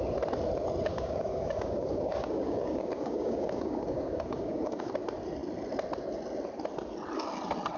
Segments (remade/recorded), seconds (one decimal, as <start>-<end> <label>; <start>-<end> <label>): 0.0-0.9 recorded; 0.9-4.9 remade; 4.9-7.8 recorded